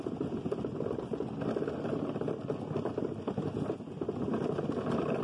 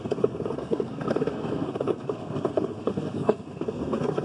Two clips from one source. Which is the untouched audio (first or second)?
first